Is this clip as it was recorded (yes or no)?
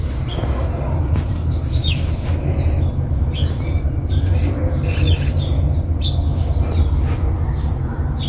yes